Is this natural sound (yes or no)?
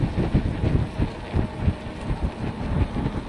yes